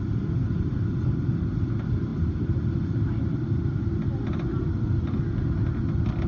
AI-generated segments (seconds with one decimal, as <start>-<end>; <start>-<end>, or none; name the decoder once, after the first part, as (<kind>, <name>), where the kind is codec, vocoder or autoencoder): none